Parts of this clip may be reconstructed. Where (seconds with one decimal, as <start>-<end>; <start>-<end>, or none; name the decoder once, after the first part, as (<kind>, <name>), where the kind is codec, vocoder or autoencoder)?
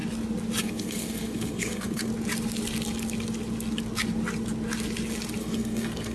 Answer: 0.6-2.1 (codec, SNAC); 5.4-6.1